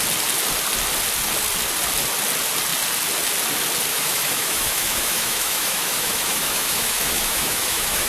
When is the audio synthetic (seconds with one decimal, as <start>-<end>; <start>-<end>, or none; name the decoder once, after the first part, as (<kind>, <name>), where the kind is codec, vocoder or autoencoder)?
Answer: 3.9-8.1 (autoencoder, DAC-VAE)